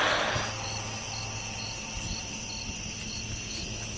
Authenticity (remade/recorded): recorded